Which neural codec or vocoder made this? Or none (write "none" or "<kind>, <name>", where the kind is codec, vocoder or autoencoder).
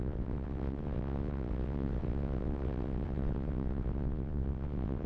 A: vocoder, WaveNeXt